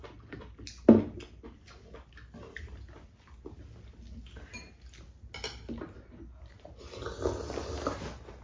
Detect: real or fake real